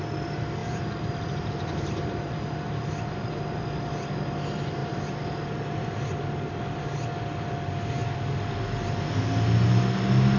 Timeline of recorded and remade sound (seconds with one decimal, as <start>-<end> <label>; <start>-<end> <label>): 0.0-0.6 recorded; 0.6-3.6 remade; 3.6-10.4 recorded